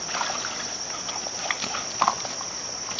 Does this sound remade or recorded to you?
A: recorded